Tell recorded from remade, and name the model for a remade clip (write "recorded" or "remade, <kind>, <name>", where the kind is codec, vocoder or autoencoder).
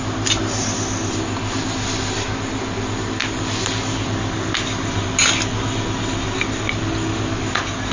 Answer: recorded